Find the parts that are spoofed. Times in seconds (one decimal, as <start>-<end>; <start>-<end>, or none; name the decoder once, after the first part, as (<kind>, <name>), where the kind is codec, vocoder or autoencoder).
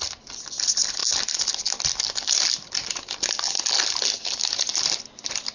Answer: none